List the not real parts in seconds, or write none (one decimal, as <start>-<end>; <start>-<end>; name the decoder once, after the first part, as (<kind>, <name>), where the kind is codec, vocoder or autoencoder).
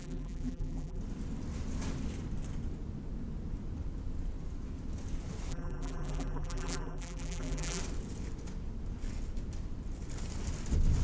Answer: 0.0-1.0 (vocoder, BigVGAN v2); 5.5-7.8